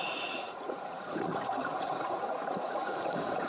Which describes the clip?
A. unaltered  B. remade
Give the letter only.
B